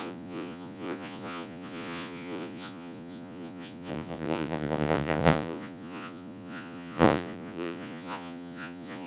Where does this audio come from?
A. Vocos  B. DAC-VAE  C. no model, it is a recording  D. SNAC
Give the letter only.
A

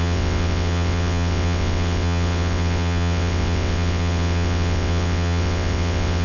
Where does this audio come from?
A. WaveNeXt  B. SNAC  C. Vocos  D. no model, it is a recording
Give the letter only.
A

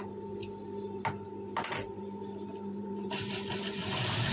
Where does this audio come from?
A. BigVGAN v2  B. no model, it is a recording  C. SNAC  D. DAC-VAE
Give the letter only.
A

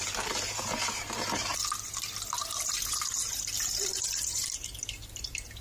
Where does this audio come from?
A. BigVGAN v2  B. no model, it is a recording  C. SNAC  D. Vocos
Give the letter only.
A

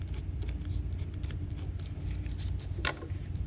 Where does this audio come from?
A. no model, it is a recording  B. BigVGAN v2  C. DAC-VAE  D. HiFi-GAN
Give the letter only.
A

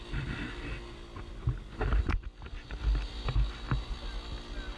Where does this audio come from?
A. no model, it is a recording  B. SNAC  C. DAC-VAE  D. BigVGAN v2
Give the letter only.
A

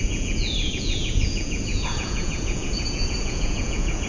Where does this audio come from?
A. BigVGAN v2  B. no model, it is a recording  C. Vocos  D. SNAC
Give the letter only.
C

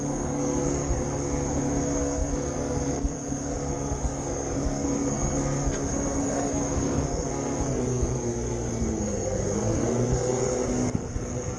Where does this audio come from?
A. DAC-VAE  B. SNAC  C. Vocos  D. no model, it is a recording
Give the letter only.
B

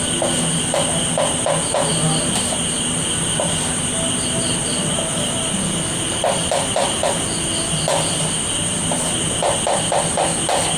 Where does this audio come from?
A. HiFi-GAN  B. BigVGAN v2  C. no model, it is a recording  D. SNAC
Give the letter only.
C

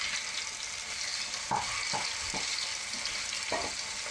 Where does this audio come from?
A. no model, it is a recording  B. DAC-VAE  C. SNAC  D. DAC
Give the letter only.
A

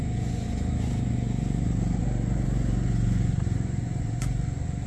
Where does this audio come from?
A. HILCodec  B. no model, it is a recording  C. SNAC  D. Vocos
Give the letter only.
D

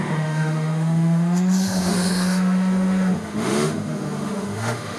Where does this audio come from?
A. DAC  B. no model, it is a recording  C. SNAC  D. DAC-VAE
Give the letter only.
D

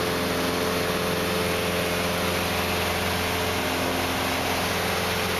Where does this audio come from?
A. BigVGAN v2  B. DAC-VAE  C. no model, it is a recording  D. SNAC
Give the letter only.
C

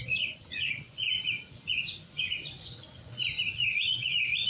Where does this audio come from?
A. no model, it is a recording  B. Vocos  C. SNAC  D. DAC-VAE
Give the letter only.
B